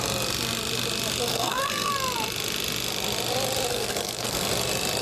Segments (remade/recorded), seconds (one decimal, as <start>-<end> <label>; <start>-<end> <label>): 0.0-1.3 recorded; 1.3-1.9 remade; 1.9-3.7 recorded; 3.7-4.5 remade; 4.5-5.0 recorded